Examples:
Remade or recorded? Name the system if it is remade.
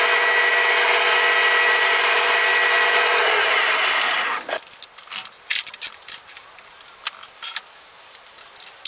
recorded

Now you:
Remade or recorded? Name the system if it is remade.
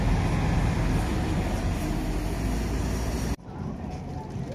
recorded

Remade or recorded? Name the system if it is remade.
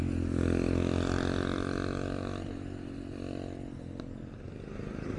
recorded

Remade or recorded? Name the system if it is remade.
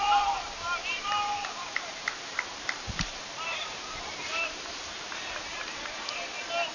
remade, vocoder, BigVGAN v2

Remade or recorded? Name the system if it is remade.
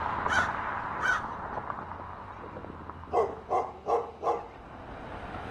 recorded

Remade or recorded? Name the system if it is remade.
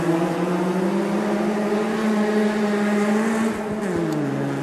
recorded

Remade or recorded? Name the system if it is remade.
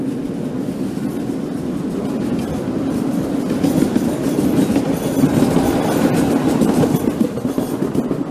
recorded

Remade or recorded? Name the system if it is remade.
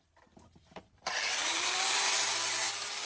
remade, vocoder, BigVGAN v2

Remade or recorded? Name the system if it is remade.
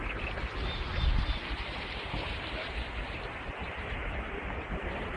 remade, vocoder, BigVGAN v2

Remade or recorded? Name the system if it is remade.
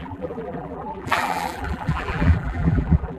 remade, vocoder, BigVGAN v2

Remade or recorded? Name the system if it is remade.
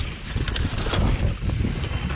recorded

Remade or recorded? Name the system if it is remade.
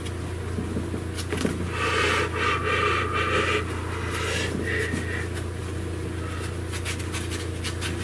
recorded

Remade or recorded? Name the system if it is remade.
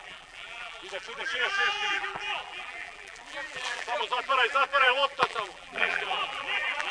remade, vocoder, BigVGAN v2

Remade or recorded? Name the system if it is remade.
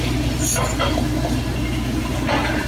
recorded